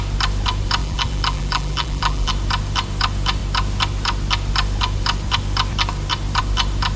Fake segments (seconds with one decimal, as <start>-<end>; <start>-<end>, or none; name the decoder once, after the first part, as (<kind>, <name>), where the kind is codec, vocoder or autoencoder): 0.8-2.3 (vocoder, BigVGAN v2)